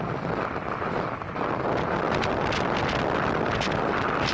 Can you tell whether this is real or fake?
real